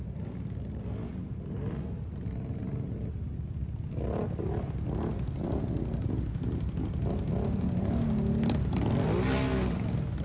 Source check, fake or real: real